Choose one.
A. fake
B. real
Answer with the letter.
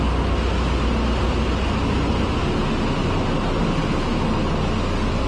B